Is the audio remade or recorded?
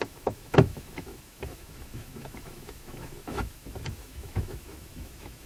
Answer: remade